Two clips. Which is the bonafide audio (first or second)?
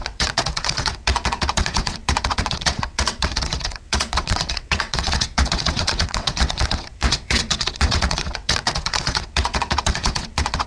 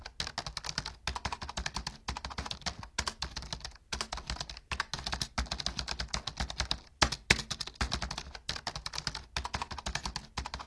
second